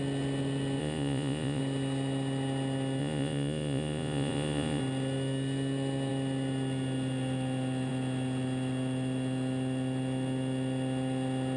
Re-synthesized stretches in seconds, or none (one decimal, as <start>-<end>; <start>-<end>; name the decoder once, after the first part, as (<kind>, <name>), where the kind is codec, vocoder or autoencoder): 0.8-1.6 (vocoder, Vocos); 3.0-4.8